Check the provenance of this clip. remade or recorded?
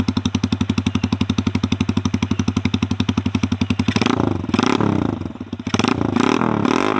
recorded